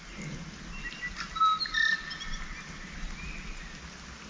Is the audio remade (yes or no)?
no